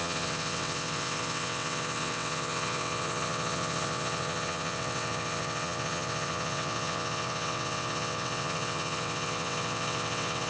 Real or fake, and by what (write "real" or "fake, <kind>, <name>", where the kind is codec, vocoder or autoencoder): fake, vocoder, WaveNeXt